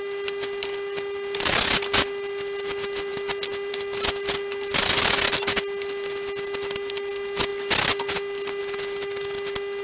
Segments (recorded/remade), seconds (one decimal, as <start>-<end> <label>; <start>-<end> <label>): 0.0-9.8 recorded